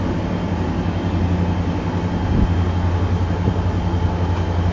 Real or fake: real